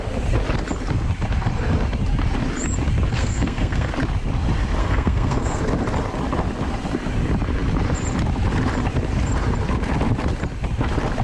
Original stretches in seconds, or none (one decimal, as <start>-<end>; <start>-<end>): 0.0-3.1; 3.9-4.8; 5.6-11.2